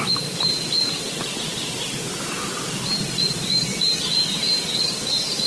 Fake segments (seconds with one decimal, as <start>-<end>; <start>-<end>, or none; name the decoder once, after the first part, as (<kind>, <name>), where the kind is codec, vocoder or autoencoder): none